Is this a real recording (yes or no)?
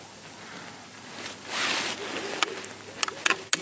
yes